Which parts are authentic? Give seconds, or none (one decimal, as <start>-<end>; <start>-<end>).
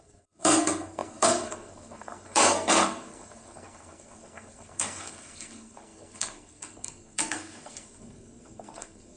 none